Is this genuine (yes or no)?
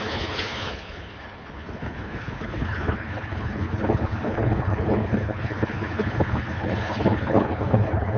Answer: no